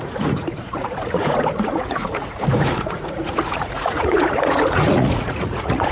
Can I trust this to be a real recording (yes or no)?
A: no